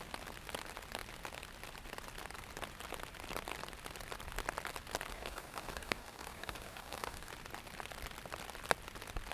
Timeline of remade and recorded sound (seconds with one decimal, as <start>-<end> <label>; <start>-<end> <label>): 0.0-5.1 recorded; 5.1-7.3 remade; 7.3-9.3 recorded